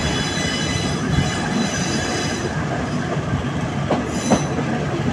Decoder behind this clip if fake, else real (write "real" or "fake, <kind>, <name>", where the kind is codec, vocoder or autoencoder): real